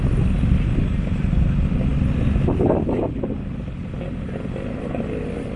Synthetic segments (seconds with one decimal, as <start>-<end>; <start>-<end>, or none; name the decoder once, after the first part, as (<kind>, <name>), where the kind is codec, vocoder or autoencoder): none